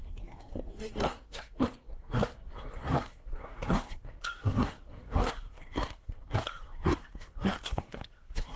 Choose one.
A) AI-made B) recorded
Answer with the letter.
A